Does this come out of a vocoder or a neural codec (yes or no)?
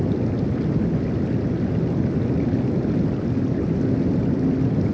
no